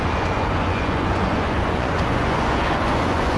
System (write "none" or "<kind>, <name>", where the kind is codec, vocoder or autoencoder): vocoder, Vocos